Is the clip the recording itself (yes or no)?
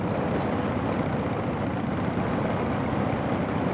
yes